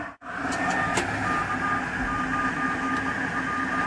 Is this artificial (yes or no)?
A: no